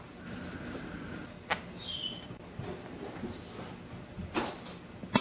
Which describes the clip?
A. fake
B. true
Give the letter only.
B